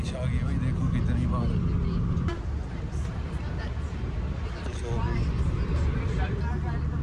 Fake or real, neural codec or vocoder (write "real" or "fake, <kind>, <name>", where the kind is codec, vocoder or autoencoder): real